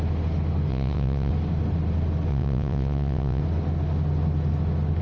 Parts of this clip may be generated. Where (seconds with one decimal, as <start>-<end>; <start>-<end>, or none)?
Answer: 0.7-1.3; 2.3-3.4